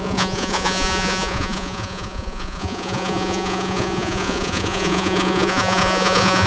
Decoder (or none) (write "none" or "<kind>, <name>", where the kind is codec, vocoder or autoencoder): vocoder, Vocos